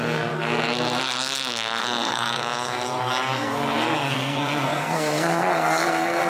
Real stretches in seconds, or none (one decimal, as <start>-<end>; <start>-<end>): none